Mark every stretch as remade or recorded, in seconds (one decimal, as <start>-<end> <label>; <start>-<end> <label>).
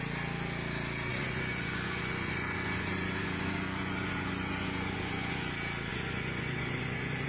0.0-1.1 recorded; 1.1-5.5 remade; 5.5-5.9 recorded; 5.9-7.3 remade